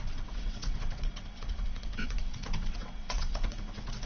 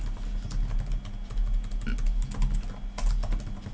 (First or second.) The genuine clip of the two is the second